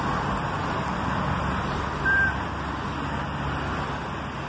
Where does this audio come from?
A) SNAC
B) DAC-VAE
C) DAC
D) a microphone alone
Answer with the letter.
D